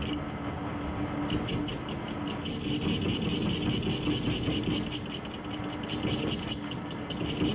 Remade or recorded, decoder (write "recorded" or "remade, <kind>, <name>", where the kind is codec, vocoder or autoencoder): recorded